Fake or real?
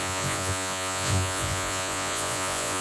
fake